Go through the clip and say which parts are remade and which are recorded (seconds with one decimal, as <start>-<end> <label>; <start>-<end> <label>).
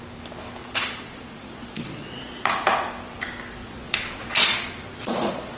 0.0-0.6 recorded; 0.6-2.5 remade; 2.5-3.6 recorded; 3.6-5.6 remade